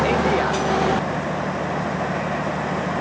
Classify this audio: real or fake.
real